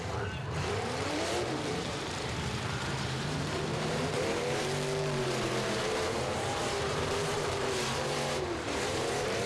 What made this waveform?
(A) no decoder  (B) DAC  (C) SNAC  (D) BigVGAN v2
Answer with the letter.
D